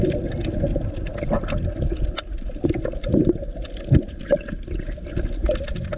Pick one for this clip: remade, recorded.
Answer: recorded